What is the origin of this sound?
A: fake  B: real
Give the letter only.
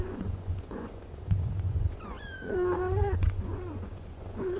A